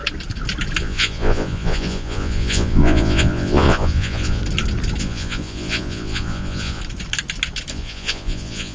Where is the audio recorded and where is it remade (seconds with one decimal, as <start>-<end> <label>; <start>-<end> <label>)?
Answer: 0.0-0.8 recorded; 0.8-4.4 remade; 4.4-5.0 recorded; 5.0-6.8 remade; 6.8-7.7 recorded; 7.7-8.7 remade